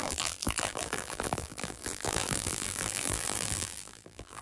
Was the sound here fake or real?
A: fake